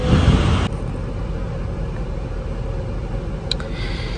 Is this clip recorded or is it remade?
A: recorded